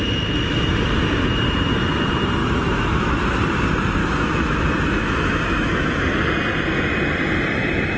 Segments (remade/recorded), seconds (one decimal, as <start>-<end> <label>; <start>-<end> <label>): 0.0-2.4 recorded; 2.4-3.2 remade; 3.2-4.0 recorded; 4.0-6.0 remade; 6.0-8.0 recorded